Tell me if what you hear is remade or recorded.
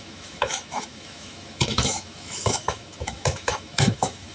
remade